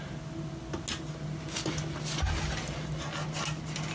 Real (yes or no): yes